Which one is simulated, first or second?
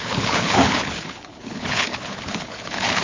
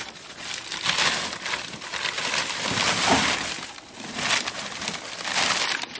first